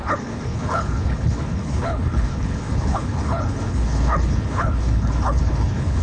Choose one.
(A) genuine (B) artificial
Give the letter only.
B